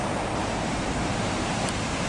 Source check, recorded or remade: remade